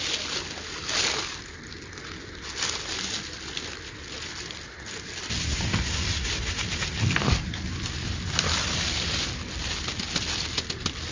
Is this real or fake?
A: real